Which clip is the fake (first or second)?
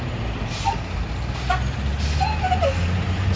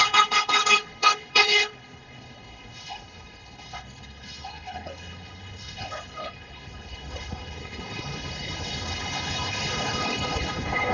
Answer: second